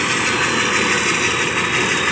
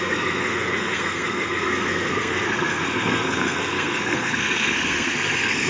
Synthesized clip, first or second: second